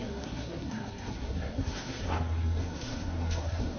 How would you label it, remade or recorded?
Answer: remade